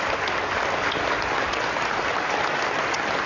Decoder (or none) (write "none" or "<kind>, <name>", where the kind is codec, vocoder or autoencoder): none